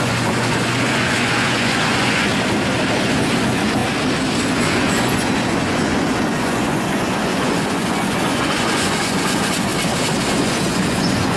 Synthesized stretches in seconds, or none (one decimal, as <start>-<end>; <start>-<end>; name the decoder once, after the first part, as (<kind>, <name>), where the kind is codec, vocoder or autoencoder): 0.0-2.3 (vocoder, Vocos); 2.9-3.8; 4.5-9.7; 10.3-11.4

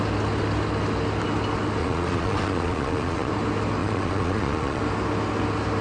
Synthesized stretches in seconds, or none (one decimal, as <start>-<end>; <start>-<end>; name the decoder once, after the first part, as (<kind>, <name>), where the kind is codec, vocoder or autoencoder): 1.8-3.3 (vocoder, Vocos); 3.8-4.8

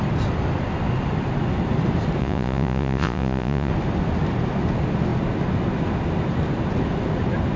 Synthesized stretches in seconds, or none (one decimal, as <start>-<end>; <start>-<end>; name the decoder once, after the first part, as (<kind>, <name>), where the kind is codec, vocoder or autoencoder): 2.2-3.7 (vocoder, Vocos)